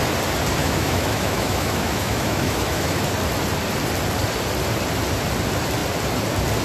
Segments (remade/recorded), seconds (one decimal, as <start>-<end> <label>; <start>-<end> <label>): 0.0-0.6 recorded; 0.6-3.0 remade; 3.0-6.6 recorded